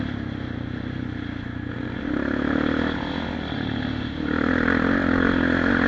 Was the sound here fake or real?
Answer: real